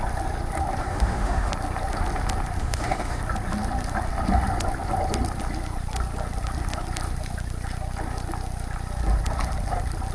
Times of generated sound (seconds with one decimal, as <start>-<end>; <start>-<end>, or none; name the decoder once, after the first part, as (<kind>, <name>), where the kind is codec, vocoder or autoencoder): 0.8-1.5 (autoencoder, DAC-VAE); 2.6-3.2